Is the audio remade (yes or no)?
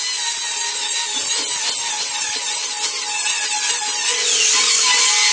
no